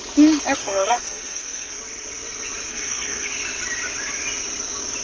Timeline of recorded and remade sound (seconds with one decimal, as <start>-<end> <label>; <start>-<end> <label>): 0.0-0.6 recorded; 0.6-1.7 remade; 1.7-2.7 recorded; 2.7-3.3 remade; 3.3-5.0 recorded